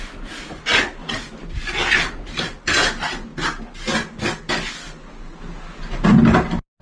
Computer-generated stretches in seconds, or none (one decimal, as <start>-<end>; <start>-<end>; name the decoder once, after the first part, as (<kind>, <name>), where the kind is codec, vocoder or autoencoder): none